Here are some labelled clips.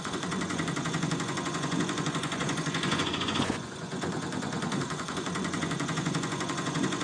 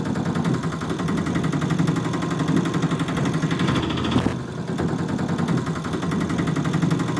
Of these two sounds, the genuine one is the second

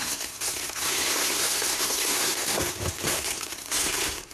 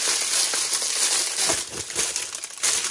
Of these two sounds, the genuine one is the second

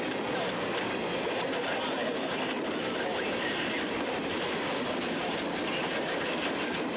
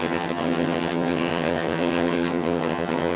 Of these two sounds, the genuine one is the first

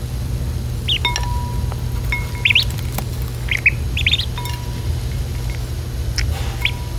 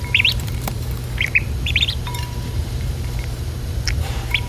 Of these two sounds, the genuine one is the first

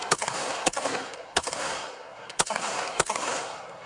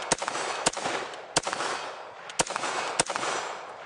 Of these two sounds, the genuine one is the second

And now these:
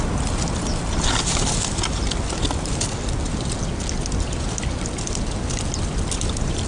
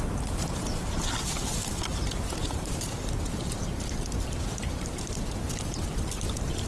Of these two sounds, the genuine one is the first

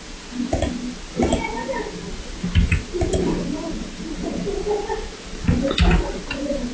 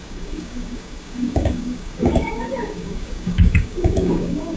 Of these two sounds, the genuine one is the first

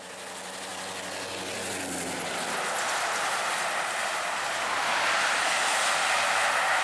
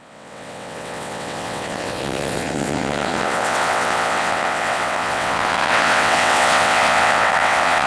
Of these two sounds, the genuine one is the first